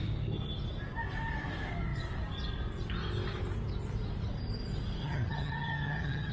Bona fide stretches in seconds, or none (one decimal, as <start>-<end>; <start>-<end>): 0.0-5.0